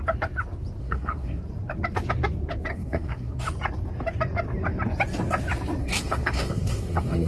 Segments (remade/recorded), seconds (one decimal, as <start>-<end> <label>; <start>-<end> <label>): 0.0-0.8 recorded; 0.8-1.4 remade; 1.4-2.7 recorded; 2.7-3.4 remade; 3.4-5.8 recorded; 5.8-7.3 remade